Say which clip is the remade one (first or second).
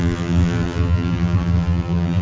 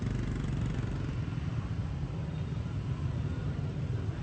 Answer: first